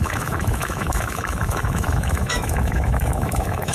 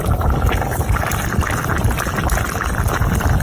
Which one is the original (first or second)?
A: second